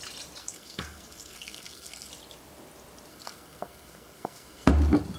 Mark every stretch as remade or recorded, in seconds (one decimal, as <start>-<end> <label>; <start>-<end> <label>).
0.0-0.4 recorded; 0.4-2.1 remade; 2.1-3.1 recorded; 3.1-4.7 remade; 4.7-5.2 recorded